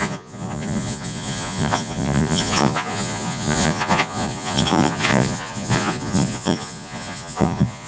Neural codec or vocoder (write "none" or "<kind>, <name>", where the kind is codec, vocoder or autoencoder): vocoder, Vocos